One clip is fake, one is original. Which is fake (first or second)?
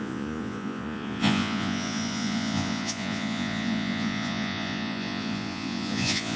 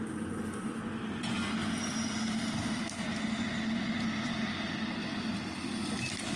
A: first